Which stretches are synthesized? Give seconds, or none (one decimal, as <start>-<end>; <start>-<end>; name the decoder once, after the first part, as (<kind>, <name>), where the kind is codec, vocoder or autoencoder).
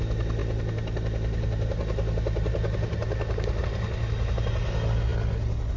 none